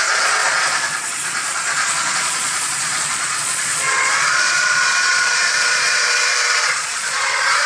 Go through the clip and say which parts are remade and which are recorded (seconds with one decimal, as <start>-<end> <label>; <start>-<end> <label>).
0.0-7.7 remade